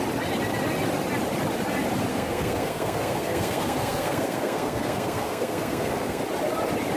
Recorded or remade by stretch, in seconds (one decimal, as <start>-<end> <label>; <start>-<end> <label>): 0.0-2.1 recorded; 2.1-6.2 remade; 6.2-7.0 recorded